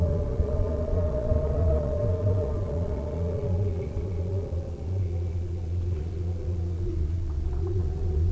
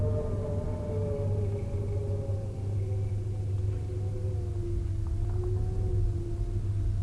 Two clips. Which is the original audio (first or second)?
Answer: second